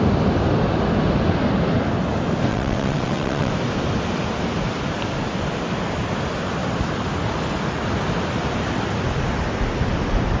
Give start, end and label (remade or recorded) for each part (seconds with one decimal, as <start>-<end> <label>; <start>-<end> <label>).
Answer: 0.0-2.5 recorded; 2.5-3.5 remade; 3.5-10.4 recorded